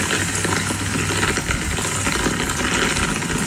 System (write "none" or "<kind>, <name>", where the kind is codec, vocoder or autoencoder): none